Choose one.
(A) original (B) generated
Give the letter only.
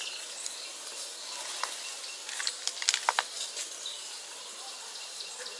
A